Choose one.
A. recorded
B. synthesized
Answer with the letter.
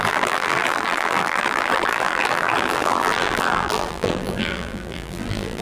B